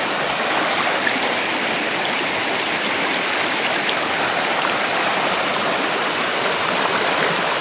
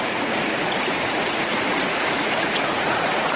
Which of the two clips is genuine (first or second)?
first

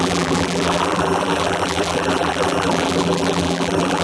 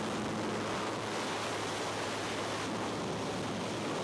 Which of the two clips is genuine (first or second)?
second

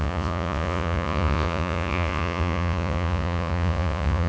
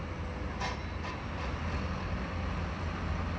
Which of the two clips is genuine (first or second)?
second